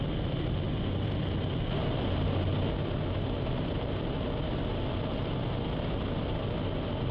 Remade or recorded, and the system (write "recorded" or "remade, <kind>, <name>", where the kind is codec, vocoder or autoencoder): recorded